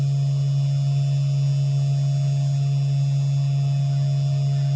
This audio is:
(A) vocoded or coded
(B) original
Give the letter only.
B